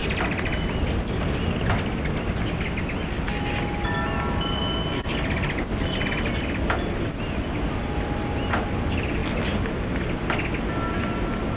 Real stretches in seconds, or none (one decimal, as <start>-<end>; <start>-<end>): 0.0-11.6